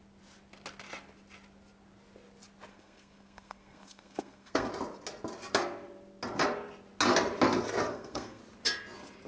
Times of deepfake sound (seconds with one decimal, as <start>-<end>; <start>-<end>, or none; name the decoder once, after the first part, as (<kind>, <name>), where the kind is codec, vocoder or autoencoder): 2.7-4.7 (codec, SNAC); 7.9-8.4

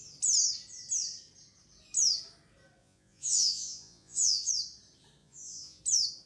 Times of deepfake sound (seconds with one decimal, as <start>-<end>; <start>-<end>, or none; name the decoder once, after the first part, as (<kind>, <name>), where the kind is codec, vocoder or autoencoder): 2.8-4.5 (vocoder, Vocos); 5.2-5.8

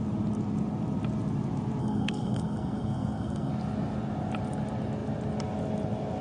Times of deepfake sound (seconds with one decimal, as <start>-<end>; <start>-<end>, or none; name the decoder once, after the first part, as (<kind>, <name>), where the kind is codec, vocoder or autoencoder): 1.8-3.5 (codec, SNAC)

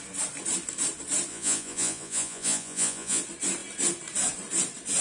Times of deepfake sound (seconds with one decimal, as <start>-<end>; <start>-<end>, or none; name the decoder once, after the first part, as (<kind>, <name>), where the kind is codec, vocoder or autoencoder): 1.3-3.2 (vocoder, Vocos)

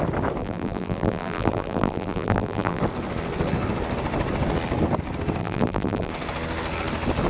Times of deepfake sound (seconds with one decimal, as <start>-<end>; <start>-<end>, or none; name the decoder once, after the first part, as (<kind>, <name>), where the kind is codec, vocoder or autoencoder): 0.4-2.8 (vocoder, BigVGAN v2); 5.4-6.1

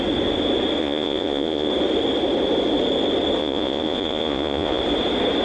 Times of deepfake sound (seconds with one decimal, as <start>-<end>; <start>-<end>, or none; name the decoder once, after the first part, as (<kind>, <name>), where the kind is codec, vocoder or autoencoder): 0.8-1.7 (vocoder, Vocos); 3.4-4.8

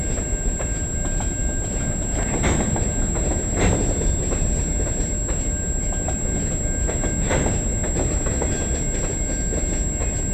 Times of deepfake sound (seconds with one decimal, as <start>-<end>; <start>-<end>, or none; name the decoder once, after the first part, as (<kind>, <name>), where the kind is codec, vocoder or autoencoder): none